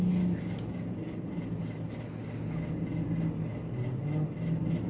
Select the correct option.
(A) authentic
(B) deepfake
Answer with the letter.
A